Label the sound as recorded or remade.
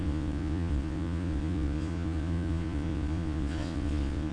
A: remade